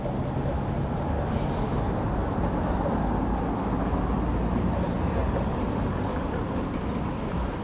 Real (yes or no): yes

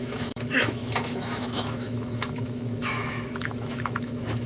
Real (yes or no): no